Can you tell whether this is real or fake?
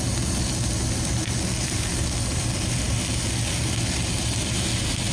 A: real